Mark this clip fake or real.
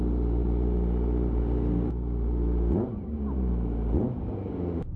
real